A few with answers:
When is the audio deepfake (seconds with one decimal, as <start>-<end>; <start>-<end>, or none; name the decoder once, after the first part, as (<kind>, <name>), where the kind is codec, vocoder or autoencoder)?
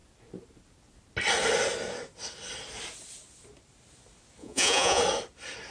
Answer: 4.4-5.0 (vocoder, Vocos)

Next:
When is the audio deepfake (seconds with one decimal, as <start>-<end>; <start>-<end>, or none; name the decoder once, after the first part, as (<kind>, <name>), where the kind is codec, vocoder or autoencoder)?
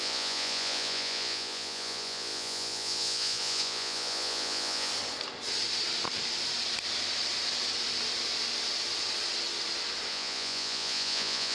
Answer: 0.0-4.9 (vocoder, Vocos); 10.1-11.5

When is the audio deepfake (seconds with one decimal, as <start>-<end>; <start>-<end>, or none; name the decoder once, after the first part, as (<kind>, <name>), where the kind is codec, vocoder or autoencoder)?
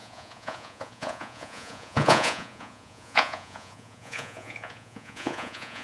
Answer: 0.0-5.8 (vocoder, Vocos)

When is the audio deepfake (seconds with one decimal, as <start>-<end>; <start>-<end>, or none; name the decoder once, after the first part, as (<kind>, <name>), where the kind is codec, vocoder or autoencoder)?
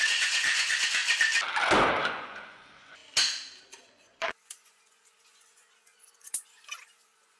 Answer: 0.0-1.0 (vocoder, Vocos); 2.1-3.0; 3.8-7.4